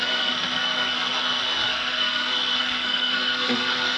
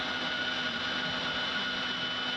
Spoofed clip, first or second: first